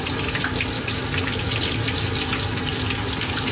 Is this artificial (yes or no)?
yes